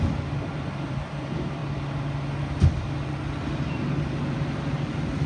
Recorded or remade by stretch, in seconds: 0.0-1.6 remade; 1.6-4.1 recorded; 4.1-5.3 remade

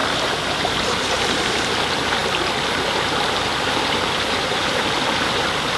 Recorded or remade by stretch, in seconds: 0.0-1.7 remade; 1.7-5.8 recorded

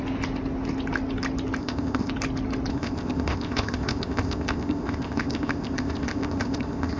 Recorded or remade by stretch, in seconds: 0.0-1.6 recorded; 1.6-2.1 remade; 2.1-2.7 recorded; 2.7-7.0 remade

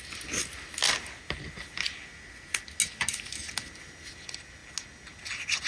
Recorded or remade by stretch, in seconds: 0.0-5.7 recorded

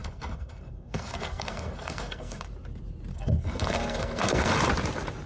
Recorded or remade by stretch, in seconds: 0.0-2.5 remade; 2.5-3.1 recorded; 3.1-4.5 remade; 4.5-5.3 recorded

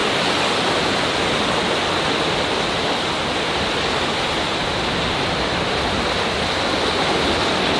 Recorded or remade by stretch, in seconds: 0.0-7.8 recorded